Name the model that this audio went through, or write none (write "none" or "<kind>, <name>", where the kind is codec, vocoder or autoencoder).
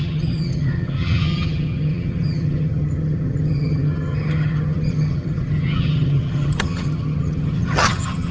vocoder, HiFi-GAN